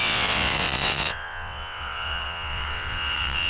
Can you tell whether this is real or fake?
fake